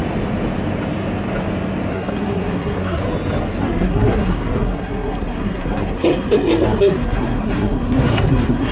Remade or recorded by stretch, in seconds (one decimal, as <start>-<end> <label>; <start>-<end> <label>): 0.0-1.9 recorded; 1.9-3.0 remade; 3.0-3.6 recorded; 3.6-8.7 remade